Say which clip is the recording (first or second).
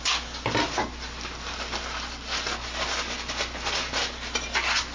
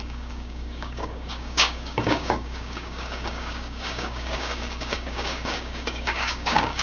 first